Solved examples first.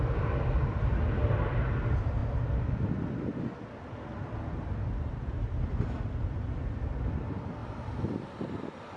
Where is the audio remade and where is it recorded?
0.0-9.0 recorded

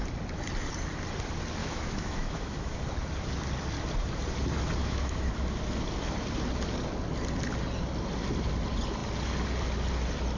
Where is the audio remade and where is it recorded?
0.0-1.6 recorded; 1.6-2.8 remade; 2.8-4.8 recorded; 4.8-5.3 remade; 5.3-10.4 recorded

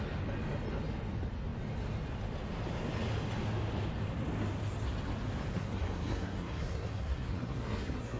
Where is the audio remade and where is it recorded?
0.0-5.5 recorded; 5.5-8.2 remade

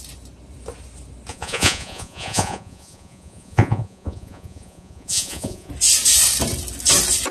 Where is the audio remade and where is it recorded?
0.0-1.3 recorded; 1.3-5.7 remade; 5.7-7.3 recorded